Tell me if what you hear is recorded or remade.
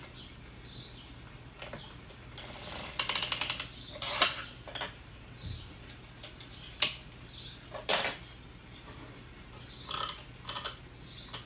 recorded